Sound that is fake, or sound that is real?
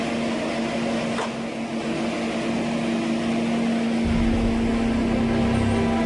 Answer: real